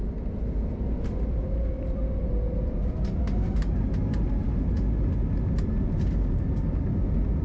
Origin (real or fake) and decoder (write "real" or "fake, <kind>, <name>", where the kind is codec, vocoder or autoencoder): real